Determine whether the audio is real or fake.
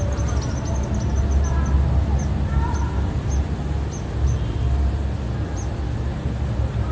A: real